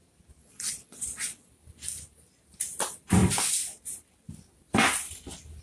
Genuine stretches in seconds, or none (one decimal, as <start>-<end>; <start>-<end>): 0.0-0.4; 1.5-5.6